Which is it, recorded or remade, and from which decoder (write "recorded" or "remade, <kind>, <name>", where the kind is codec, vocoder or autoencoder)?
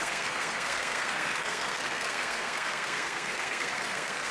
remade, codec, SNAC